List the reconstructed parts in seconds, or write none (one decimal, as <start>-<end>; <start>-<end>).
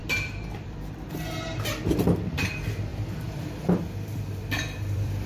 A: 0.0-2.5; 2.9-5.3